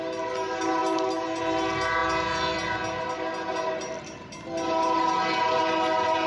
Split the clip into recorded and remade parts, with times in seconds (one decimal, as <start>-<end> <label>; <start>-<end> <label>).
0.0-6.3 recorded